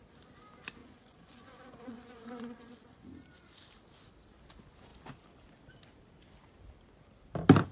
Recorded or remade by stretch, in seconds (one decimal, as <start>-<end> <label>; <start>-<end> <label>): 0.0-0.8 recorded; 0.8-3.1 remade; 3.1-7.7 recorded